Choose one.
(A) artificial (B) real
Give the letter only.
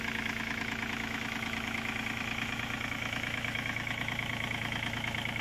A